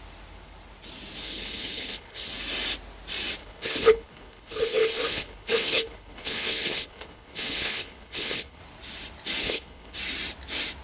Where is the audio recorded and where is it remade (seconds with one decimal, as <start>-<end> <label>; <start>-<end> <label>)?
0.0-1.2 recorded; 1.2-2.3 remade; 2.3-3.4 recorded; 3.4-8.6 remade; 8.6-9.4 recorded; 9.4-10.0 remade; 10.0-10.8 recorded